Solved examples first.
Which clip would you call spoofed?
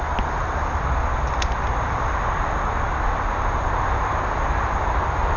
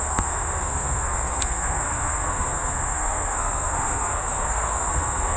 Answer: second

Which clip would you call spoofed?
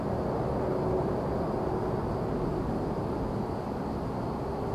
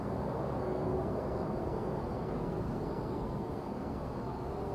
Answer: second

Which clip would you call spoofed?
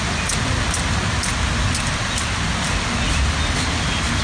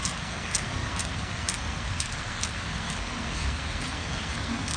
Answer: second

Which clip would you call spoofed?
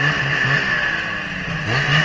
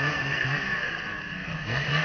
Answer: second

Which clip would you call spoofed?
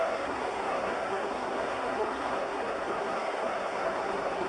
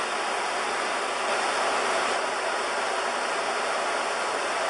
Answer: first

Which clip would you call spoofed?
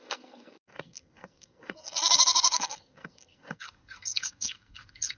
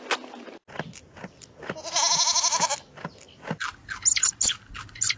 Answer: first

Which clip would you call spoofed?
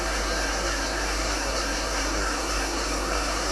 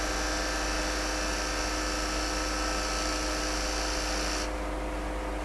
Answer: first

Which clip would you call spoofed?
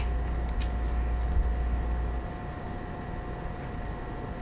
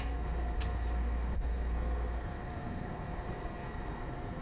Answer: second